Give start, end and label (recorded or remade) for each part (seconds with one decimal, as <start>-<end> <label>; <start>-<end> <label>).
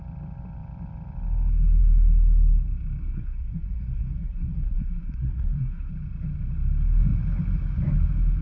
0.0-3.0 recorded; 3.0-5.9 remade; 5.9-8.4 recorded